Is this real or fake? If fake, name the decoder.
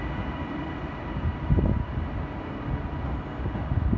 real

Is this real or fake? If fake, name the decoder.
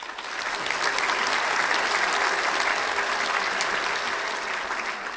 real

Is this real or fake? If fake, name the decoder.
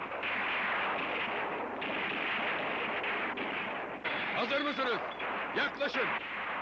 real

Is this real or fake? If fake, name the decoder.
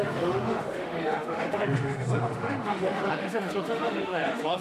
fake, autoencoder, DAC-VAE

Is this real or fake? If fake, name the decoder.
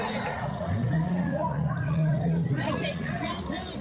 fake, vocoder, Vocos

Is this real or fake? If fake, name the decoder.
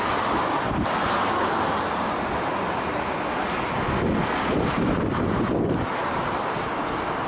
real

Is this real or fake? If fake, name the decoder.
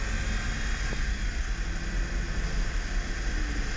real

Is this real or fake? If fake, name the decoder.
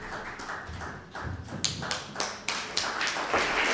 real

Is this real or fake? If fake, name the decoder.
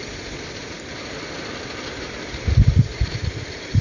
real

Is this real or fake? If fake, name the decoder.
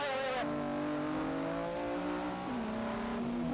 real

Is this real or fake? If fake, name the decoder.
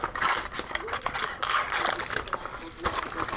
real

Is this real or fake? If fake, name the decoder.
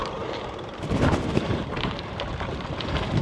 fake, vocoder, BigVGAN v2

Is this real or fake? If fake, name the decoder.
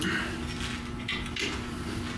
real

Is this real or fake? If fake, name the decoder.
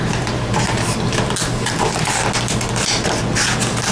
real